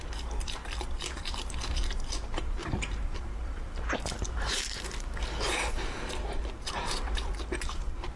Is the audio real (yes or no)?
no